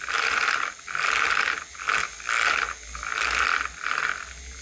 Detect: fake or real real